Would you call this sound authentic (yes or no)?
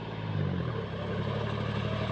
yes